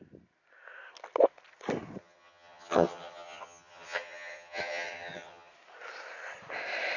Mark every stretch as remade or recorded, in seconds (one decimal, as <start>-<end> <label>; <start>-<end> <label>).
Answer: 0.0-2.0 recorded; 2.0-5.5 remade; 5.5-7.0 recorded

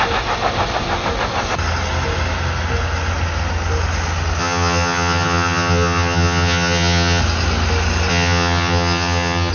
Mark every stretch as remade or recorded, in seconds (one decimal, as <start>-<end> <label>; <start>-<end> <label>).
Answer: 0.0-4.4 recorded; 4.4-7.2 remade; 7.2-8.1 recorded; 8.1-9.5 remade

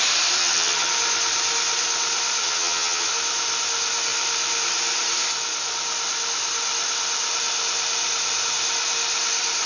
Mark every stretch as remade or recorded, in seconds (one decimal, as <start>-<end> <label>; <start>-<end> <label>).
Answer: 0.0-0.4 recorded; 0.4-0.9 remade; 0.9-2.4 recorded; 2.4-3.1 remade; 3.1-9.7 recorded

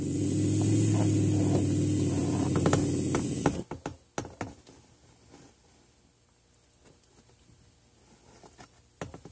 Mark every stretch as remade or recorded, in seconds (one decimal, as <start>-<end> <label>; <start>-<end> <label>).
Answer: 0.0-9.3 recorded

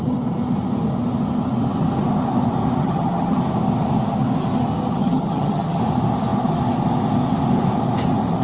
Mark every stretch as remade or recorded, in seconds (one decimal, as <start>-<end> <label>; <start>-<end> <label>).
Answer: 0.0-2.8 recorded; 2.8-3.4 remade; 3.4-5.0 recorded; 5.0-5.8 remade; 5.8-8.4 recorded

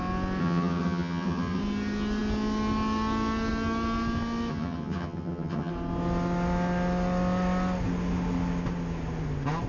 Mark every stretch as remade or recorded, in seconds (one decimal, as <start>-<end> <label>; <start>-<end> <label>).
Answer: 0.0-0.4 recorded; 0.4-1.6 remade; 1.6-4.5 recorded; 4.5-5.7 remade; 5.7-9.7 recorded

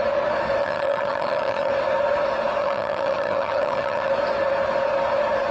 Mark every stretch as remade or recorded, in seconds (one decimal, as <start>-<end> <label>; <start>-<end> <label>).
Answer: 0.0-0.6 recorded; 0.6-1.7 remade; 1.7-2.6 recorded; 2.6-4.1 remade; 4.1-5.5 recorded

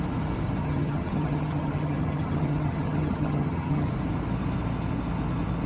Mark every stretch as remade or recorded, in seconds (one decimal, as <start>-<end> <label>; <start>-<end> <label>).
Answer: 0.0-0.6 recorded; 0.6-3.9 remade; 3.9-5.7 recorded